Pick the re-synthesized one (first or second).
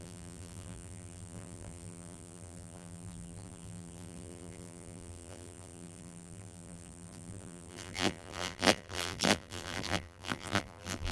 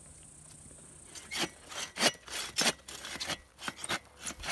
first